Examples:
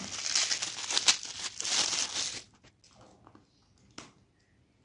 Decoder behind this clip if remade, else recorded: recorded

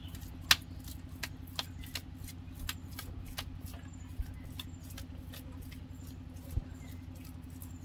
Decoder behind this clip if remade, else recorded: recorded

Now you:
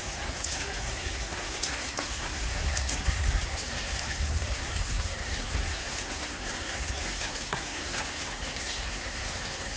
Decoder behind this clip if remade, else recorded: remade, codec, SNAC